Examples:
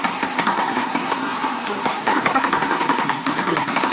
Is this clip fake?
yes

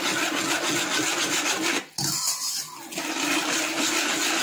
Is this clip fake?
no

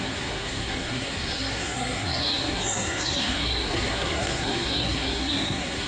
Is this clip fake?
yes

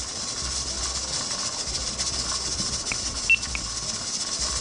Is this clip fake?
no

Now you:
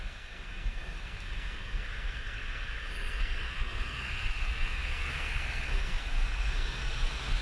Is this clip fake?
yes